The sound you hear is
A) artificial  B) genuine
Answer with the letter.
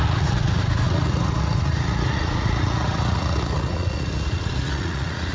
A